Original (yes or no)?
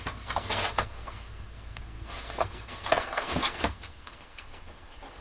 no